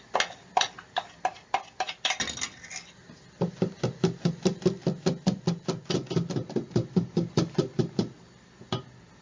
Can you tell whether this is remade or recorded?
recorded